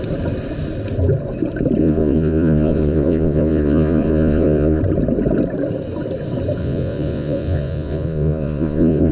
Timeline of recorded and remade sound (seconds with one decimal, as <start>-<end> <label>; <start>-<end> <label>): 0.0-1.8 recorded; 1.8-4.8 remade; 4.8-6.6 recorded; 6.6-9.1 remade